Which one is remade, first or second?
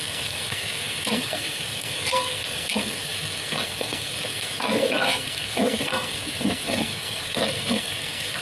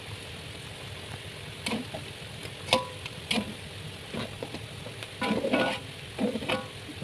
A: first